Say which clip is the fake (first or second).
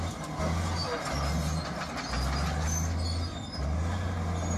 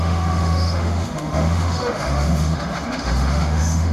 second